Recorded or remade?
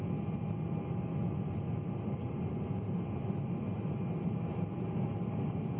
recorded